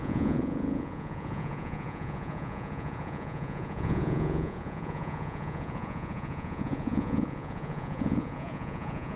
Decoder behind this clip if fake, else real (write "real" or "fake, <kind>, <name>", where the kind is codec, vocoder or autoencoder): fake, vocoder, Vocos